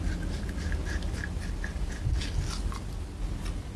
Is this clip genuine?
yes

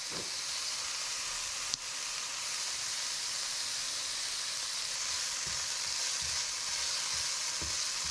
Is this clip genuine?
yes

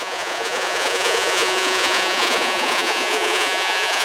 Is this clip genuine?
no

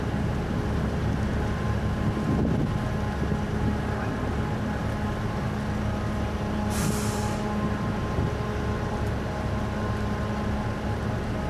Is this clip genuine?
yes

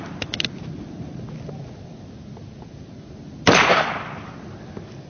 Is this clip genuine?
yes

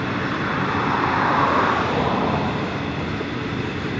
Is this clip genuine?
yes